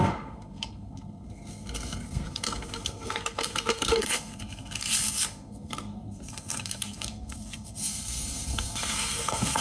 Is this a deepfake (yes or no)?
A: yes